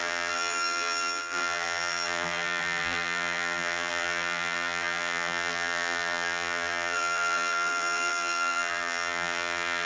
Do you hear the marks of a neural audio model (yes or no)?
yes